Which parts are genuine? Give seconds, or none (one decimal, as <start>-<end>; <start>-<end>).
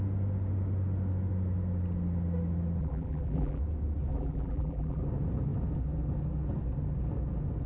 0.0-2.8; 3.6-4.1; 5.0-7.7